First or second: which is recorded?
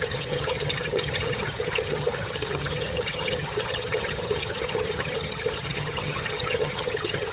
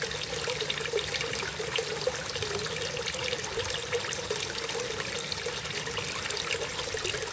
second